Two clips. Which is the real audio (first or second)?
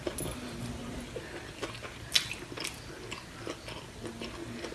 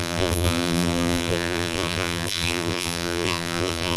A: first